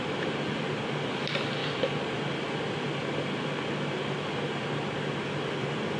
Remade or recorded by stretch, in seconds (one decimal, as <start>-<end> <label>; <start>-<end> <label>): 0.0-1.6 remade; 1.6-5.2 recorded; 5.2-6.0 remade